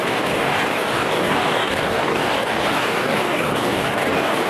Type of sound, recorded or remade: remade